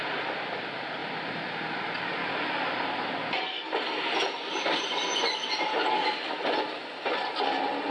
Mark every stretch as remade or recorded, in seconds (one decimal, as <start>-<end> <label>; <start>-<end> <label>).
0.0-7.9 recorded